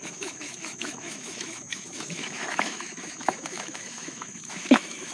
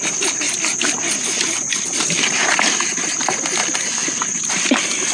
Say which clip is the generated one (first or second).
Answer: first